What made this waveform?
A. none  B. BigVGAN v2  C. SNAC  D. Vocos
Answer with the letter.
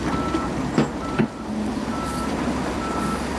A